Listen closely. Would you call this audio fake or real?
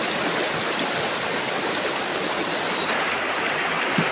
real